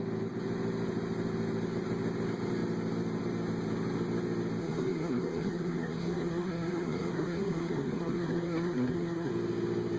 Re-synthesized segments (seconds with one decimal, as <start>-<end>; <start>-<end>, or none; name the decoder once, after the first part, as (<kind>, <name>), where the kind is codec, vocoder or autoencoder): 4.6-9.3 (codec, SNAC)